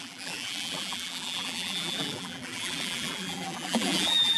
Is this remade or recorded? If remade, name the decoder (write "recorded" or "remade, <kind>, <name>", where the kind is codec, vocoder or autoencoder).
remade, vocoder, BigVGAN v2